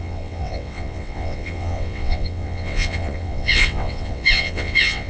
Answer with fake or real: fake